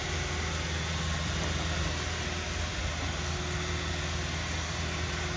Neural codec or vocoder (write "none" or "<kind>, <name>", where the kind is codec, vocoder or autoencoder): none